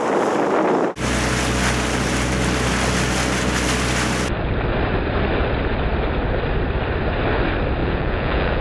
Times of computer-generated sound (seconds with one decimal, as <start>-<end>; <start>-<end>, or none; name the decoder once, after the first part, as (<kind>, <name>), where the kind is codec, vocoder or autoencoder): 7.8-8.6 (vocoder, Vocos)